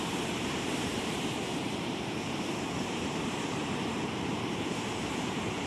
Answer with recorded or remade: remade